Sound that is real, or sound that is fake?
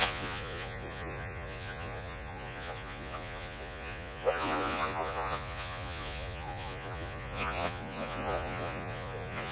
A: fake